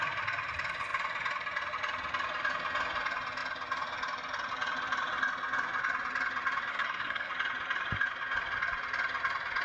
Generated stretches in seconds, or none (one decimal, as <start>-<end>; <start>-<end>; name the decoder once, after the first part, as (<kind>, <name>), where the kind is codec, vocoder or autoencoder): 6.7-7.3 (codec, SNAC)